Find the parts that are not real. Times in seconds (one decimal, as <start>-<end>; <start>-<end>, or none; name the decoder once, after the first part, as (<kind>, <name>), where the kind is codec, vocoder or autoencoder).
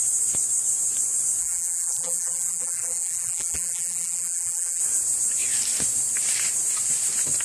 1.4-4.8 (vocoder, BigVGAN v2)